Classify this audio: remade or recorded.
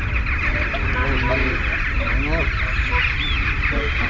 recorded